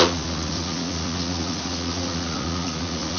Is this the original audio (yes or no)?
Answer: no